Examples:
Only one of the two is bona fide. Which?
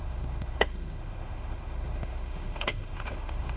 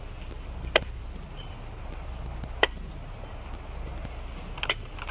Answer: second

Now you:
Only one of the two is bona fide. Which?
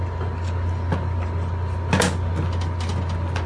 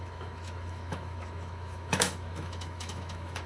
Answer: first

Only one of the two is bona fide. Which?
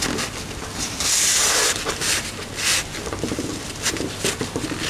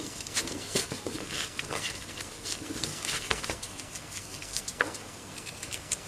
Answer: first